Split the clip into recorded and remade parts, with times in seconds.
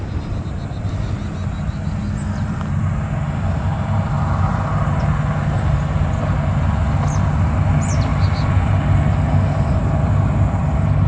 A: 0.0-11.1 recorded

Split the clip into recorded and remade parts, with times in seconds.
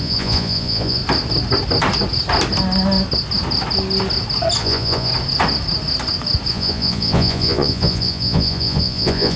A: 0.0-1.0 remade; 1.0-4.6 recorded; 4.6-5.1 remade; 5.1-6.5 recorded; 6.5-9.4 remade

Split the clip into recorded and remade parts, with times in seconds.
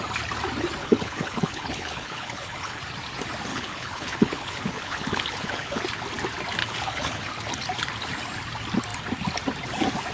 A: 0.0-0.8 recorded; 0.8-2.8 remade; 2.8-3.5 recorded; 3.5-5.8 remade; 5.8-6.6 recorded; 6.6-7.3 remade; 7.3-10.1 recorded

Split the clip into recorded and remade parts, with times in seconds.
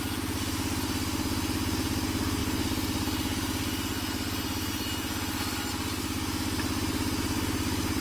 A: 0.0-8.0 recorded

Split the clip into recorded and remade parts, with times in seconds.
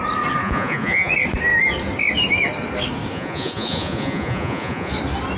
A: 0.0-0.4 recorded; 0.4-1.1 remade; 1.1-3.1 recorded; 3.1-4.9 remade; 4.9-5.4 recorded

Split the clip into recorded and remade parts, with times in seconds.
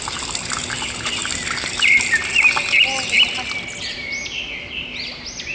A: 0.0-5.5 recorded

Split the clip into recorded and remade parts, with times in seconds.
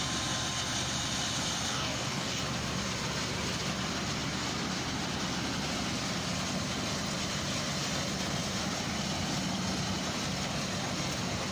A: 0.0-1.7 recorded; 1.7-2.4 remade; 2.4-11.5 recorded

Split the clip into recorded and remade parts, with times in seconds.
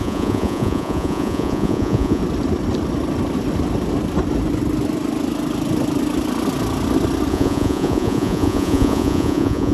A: 0.0-2.2 remade; 2.2-7.3 recorded; 7.3-9.7 remade